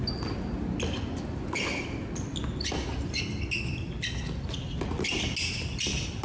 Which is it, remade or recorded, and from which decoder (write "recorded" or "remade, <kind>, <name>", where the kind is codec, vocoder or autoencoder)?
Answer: recorded